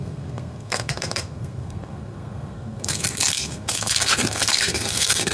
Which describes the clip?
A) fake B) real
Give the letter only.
A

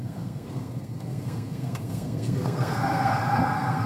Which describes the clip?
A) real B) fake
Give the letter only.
B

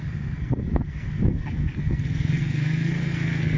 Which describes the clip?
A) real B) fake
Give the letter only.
B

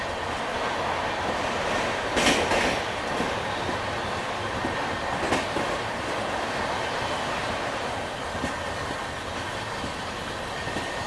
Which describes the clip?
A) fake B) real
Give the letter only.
B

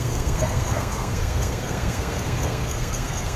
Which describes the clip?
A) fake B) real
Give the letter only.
A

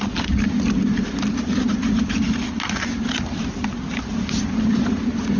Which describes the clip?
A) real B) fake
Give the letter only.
A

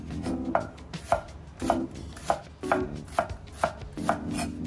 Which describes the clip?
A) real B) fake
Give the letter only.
A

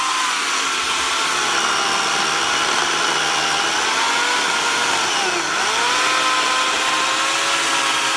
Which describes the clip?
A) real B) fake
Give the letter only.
A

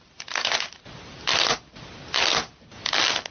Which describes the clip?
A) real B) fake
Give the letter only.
A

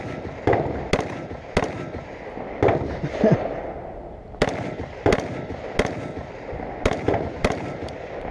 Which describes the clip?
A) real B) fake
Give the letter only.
A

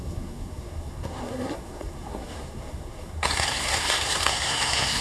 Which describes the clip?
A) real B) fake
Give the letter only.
B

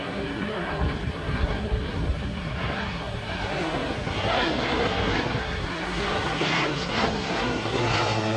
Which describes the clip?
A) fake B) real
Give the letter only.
A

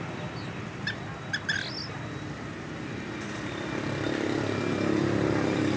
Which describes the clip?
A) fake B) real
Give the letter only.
B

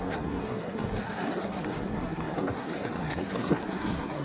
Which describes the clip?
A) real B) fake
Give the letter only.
B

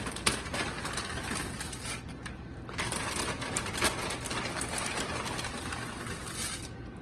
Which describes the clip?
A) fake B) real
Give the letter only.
B